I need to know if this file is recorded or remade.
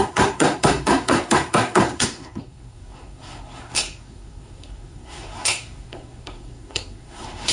remade